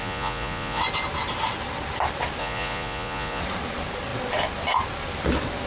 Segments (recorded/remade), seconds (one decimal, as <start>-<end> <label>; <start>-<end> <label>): 0.0-0.8 remade; 0.8-2.4 recorded; 2.4-3.4 remade; 3.4-5.7 recorded